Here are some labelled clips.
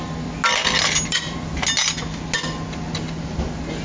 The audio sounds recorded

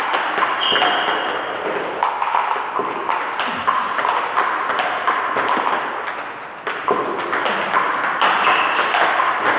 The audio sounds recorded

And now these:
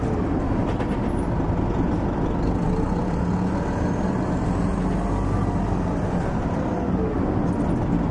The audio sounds recorded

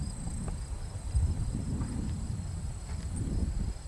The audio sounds recorded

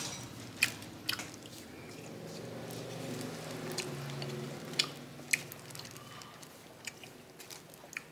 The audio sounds recorded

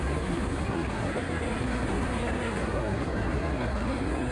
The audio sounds remade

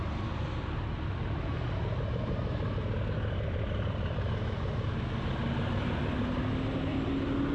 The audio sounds recorded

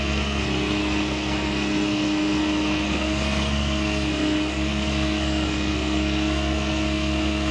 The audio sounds remade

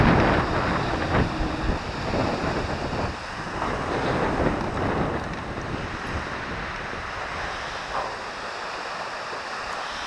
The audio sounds recorded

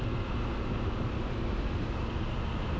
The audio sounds recorded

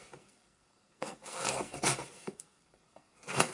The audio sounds remade